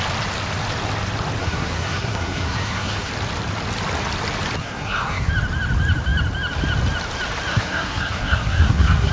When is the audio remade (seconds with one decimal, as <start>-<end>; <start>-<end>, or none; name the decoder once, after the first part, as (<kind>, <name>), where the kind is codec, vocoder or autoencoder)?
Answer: 1.4-3.1 (codec, SNAC); 4.6-5.3; 7.5-9.1